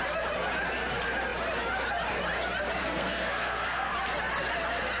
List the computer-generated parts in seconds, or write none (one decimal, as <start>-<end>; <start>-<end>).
2.8-3.9